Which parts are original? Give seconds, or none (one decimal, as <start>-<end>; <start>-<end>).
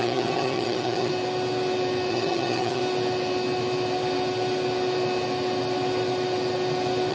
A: 1.1-2.1; 2.8-7.1